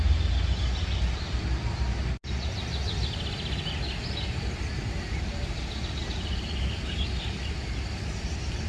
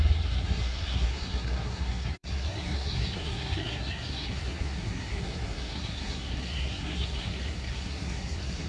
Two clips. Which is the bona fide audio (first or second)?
first